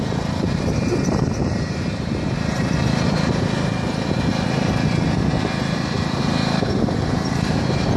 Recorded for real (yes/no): no